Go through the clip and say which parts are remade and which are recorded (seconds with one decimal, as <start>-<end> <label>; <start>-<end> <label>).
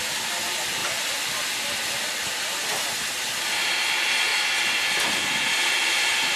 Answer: 0.0-0.8 recorded; 0.8-2.1 remade; 2.1-6.4 recorded